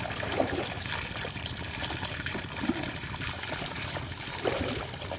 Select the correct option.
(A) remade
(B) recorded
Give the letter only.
A